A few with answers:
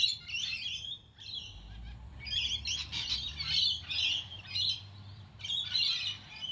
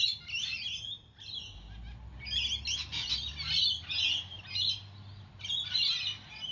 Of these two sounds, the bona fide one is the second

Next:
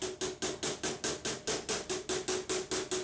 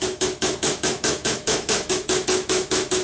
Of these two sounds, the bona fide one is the first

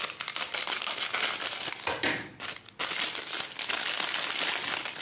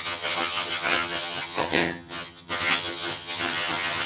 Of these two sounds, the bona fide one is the first